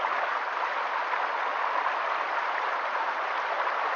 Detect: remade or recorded recorded